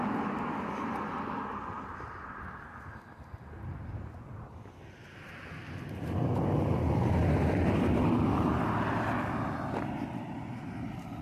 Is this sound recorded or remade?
recorded